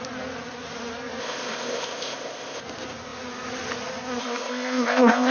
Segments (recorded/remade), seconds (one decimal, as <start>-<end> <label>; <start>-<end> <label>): 0.0-1.2 recorded; 1.2-2.6 remade; 2.6-4.2 recorded; 4.2-5.3 remade